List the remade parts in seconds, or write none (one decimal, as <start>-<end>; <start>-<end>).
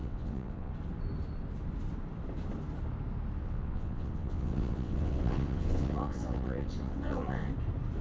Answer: 0.0-0.7; 3.4-7.5